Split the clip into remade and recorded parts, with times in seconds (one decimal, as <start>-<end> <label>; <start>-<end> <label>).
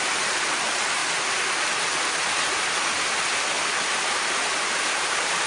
0.0-1.0 remade; 1.0-4.3 recorded; 4.3-5.5 remade